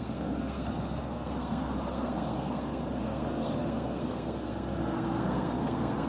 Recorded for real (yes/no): no